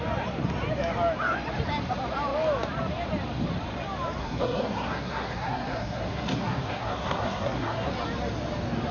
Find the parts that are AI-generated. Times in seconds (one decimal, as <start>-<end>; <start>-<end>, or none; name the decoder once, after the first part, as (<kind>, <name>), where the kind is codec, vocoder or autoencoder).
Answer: 4.2-7.9 (codec, SNAC)